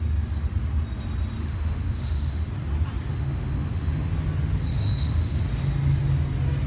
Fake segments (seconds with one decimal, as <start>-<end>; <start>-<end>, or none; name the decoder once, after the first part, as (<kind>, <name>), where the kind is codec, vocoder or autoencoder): 1.4-2.4 (autoencoder, DAC-VAE); 3.1-4.1; 4.7-5.4